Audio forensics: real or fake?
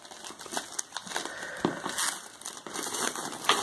real